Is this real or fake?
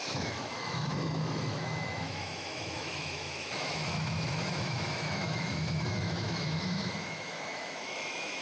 fake